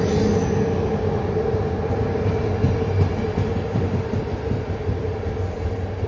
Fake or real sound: real